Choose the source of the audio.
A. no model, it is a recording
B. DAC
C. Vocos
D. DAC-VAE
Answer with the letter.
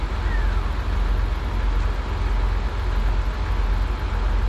A